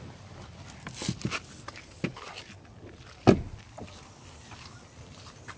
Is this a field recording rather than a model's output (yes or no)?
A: yes